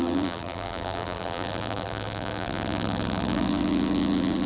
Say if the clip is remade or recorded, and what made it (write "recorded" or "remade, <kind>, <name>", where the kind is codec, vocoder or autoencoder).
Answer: remade, vocoder, BigVGAN v2